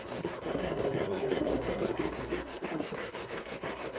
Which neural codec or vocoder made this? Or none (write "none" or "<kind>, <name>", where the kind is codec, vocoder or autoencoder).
codec, SNAC